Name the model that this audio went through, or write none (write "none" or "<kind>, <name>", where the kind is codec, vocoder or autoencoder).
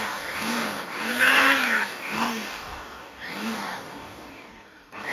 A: codec, DAC